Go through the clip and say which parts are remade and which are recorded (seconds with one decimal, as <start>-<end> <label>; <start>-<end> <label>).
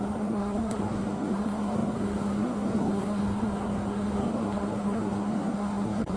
0.0-6.2 remade